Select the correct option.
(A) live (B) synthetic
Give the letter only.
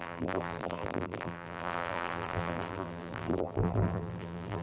B